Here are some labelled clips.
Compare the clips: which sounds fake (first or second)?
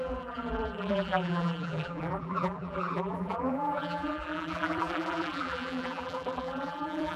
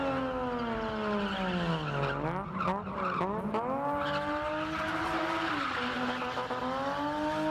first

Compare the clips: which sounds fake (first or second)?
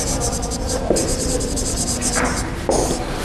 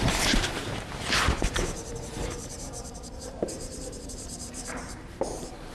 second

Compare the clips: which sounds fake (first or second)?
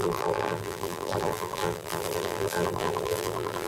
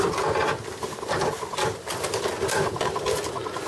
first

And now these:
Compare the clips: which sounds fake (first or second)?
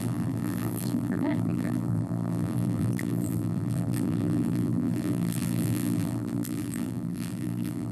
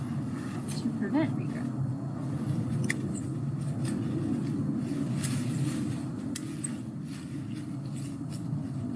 first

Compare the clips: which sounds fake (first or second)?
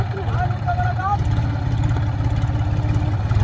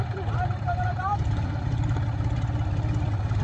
second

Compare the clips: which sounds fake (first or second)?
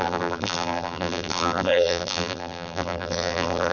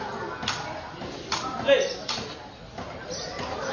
first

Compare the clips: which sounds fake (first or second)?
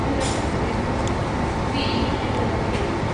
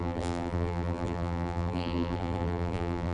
second